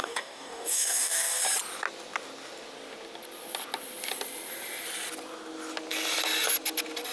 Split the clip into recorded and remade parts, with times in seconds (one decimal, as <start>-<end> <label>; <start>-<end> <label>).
0.0-1.4 remade; 1.4-7.1 recorded